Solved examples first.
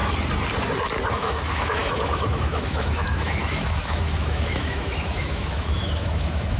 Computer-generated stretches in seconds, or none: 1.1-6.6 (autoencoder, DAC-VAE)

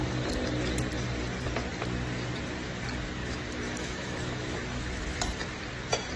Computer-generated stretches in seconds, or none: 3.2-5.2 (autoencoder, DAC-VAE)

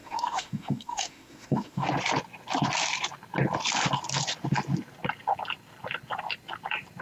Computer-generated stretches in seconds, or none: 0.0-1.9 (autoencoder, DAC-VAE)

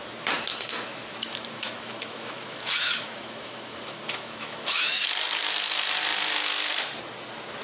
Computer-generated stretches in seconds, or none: 0.5-5.1 (autoencoder, DAC-VAE)